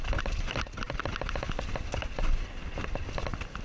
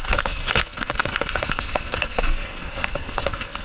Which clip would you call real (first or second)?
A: first